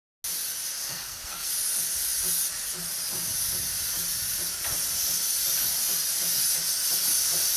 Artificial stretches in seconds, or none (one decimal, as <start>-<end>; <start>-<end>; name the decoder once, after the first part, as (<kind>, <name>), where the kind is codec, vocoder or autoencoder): 0.8-1.5 (codec, SNAC)

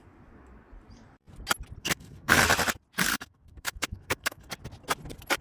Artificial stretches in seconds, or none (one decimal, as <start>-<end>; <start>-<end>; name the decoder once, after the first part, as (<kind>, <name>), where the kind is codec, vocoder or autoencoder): 1.8-2.4 (codec, SNAC); 3.1-4.6